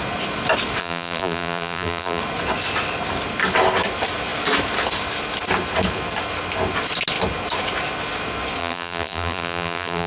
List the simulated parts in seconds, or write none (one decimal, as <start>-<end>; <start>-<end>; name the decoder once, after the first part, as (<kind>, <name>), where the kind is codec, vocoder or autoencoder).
0.8-2.2 (vocoder, BigVGAN v2); 8.6-10.1

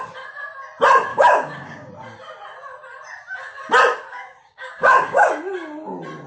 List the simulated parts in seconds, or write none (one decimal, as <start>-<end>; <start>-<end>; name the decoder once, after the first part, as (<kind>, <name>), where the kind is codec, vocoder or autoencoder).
1.1-1.9 (codec, DAC); 4.1-5.3